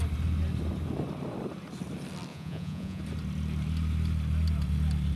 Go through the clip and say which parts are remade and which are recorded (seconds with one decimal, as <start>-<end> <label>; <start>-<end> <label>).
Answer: 0.0-2.3 recorded; 2.3-3.0 remade; 3.0-5.2 recorded